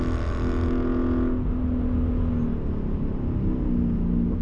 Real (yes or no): yes